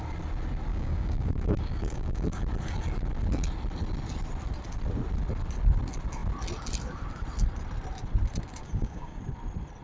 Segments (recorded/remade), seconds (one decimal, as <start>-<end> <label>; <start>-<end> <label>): 0.0-0.7 recorded; 0.7-2.4 remade; 2.4-8.6 recorded; 8.6-9.2 remade; 9.2-9.8 recorded